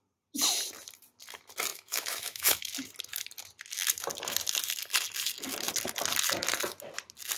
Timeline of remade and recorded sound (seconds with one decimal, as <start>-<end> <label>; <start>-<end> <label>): 0.0-1.7 recorded; 1.7-2.7 remade; 2.7-7.4 recorded